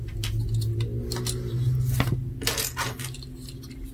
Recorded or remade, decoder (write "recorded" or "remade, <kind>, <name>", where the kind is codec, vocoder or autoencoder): recorded